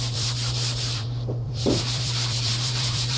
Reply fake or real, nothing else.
fake